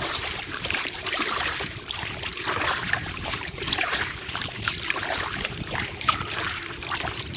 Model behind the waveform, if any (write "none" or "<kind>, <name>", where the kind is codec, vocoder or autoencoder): vocoder, BigVGAN v2